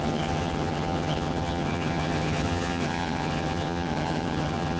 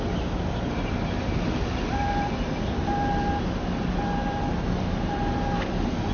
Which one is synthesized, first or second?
first